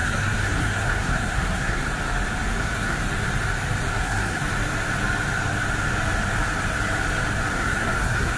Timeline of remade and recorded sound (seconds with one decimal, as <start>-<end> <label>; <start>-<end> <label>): 0.0-1.8 remade; 1.8-2.6 recorded; 2.6-3.0 remade; 3.0-3.9 recorded; 3.9-4.4 remade; 4.4-7.5 recorded; 7.5-8.4 remade